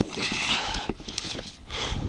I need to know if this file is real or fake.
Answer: fake